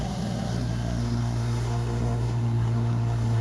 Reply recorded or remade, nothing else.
remade